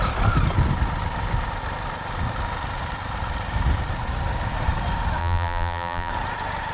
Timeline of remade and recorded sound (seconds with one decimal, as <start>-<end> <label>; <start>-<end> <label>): 0.0-5.2 recorded; 5.2-6.1 remade; 6.1-6.7 recorded